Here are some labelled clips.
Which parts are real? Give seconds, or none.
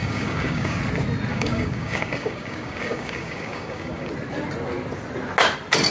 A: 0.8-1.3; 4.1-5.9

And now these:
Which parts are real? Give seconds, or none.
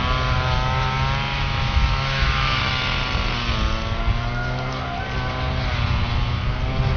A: 0.0-1.3; 2.7-7.0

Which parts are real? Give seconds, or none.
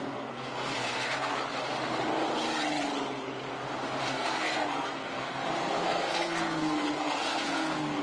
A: 1.3-4.0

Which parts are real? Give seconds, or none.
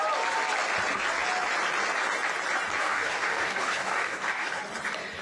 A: 0.0-2.8; 4.6-5.2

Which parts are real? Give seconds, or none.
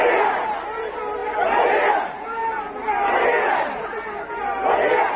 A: 0.0-5.2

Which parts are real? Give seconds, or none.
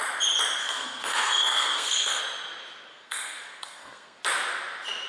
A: 0.0-0.6; 2.2-2.9; 4.2-5.1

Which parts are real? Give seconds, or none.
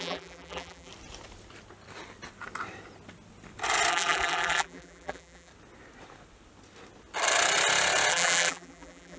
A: 0.9-3.9; 5.5-8.1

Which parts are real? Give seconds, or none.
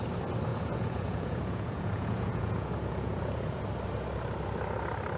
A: 0.0-0.5; 3.6-5.2